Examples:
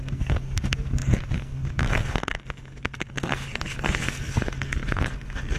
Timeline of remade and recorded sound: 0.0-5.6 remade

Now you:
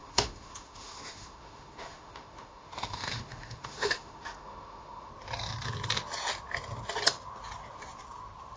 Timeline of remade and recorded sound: 0.0-5.1 remade; 5.1-8.6 recorded

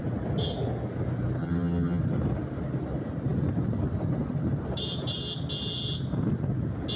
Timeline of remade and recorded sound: 0.0-1.4 recorded; 1.4-2.0 remade; 2.0-7.0 recorded

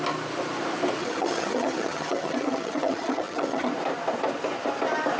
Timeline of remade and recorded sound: 0.0-1.0 recorded; 1.0-3.7 remade; 3.7-5.2 recorded

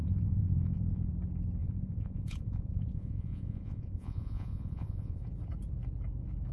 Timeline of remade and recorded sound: 0.0-1.1 remade; 1.1-1.6 recorded; 1.6-5.2 remade; 5.2-6.5 recorded

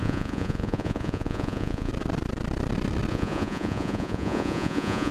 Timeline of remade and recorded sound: 0.0-1.9 remade; 1.9-3.1 recorded; 3.1-5.1 remade